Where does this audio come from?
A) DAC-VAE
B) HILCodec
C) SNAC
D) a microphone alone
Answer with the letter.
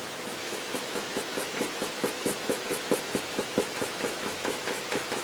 A